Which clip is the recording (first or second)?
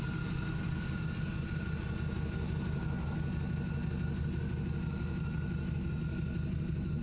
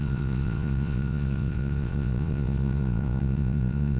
first